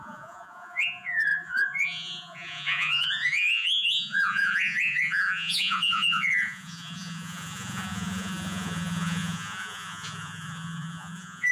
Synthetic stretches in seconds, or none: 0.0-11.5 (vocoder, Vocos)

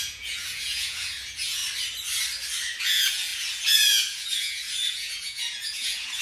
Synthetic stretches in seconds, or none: 0.0-1.6 (vocoder, Vocos); 2.8-6.2

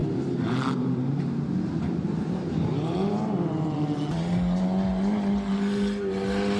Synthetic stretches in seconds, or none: 0.0-3.2 (vocoder, BigVGAN v2)